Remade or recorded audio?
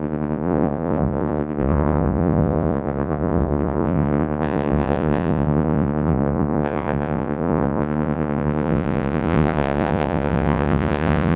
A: remade